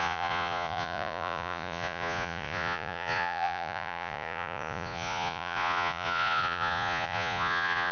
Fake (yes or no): yes